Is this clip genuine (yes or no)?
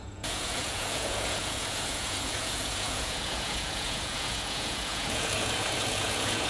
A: no